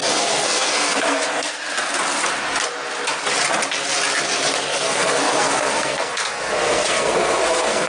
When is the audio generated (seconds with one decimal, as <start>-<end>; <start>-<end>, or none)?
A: 0.0-1.6; 4.7-7.9